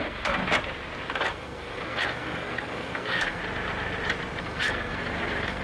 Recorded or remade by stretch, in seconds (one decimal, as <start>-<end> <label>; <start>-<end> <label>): 0.0-0.4 remade; 0.4-1.2 recorded; 1.2-3.4 remade; 3.4-4.4 recorded; 4.4-5.6 remade